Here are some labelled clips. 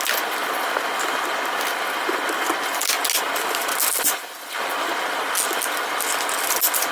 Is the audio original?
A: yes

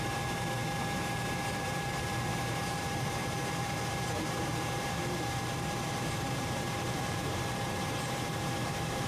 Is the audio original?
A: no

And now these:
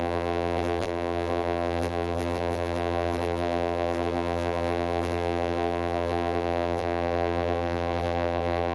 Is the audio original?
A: no